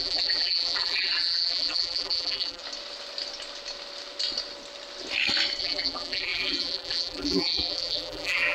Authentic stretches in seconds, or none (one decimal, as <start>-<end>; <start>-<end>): 2.6-5.6